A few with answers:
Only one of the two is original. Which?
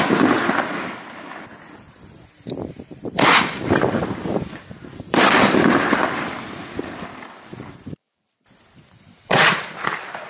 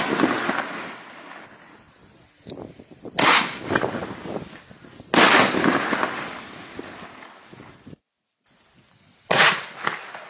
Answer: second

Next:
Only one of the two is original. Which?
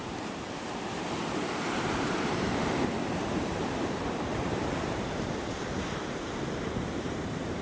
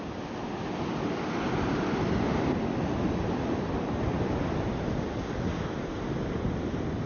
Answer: second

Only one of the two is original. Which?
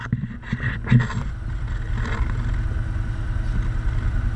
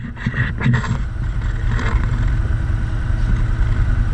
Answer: first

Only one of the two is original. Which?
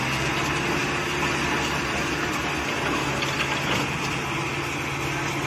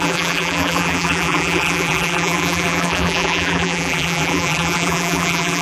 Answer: first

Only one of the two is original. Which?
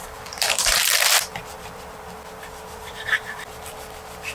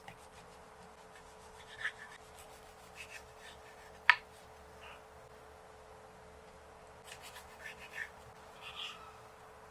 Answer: second